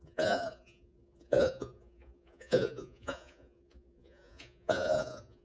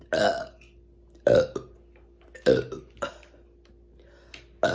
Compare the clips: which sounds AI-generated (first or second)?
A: first